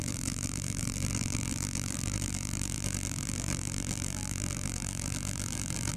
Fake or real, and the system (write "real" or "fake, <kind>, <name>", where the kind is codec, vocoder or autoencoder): fake, vocoder, BigVGAN v2